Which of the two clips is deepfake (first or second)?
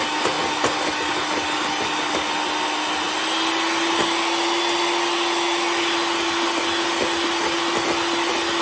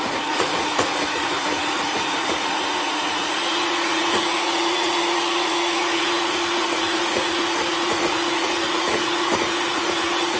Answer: second